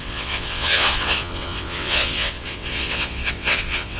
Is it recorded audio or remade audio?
remade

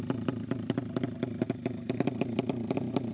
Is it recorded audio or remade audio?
recorded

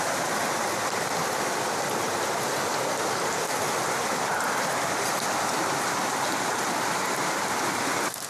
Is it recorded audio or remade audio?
recorded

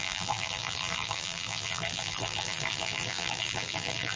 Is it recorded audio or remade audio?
remade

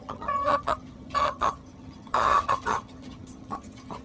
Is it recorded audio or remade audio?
remade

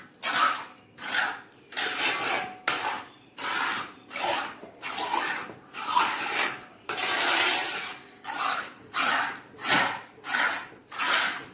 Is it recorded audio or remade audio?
recorded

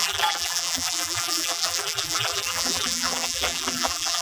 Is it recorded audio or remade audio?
remade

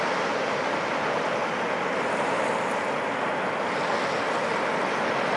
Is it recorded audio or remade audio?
recorded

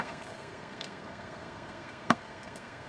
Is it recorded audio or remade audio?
remade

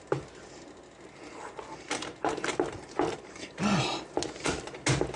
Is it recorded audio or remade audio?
recorded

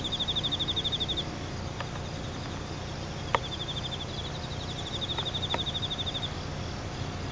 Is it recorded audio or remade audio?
recorded